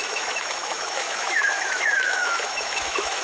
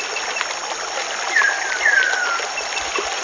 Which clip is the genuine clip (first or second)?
second